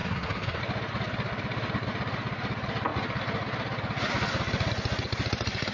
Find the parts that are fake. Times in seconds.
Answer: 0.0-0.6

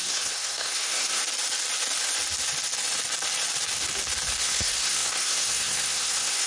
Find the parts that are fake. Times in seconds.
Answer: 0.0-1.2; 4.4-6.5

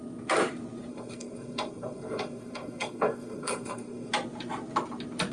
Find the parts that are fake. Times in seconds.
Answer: 0.9-4.1